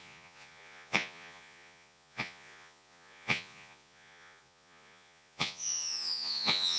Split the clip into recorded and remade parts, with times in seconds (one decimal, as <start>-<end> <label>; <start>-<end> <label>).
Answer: 0.0-6.8 remade